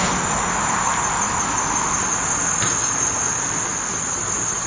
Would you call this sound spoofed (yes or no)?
no